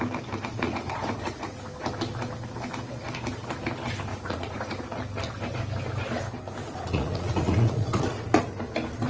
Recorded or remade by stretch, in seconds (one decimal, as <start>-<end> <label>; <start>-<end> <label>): 0.0-0.5 recorded; 0.5-1.6 remade; 1.6-4.1 recorded; 4.1-4.9 remade; 4.9-6.6 recorded; 6.6-8.4 remade; 8.4-9.1 recorded